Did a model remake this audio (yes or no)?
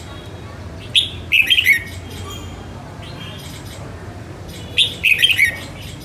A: no